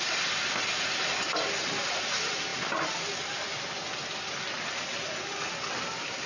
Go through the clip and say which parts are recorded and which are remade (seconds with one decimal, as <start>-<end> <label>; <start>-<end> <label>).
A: 0.0-6.3 recorded